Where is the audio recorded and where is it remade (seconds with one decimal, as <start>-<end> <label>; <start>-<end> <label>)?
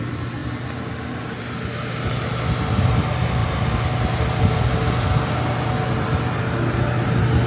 0.0-7.5 recorded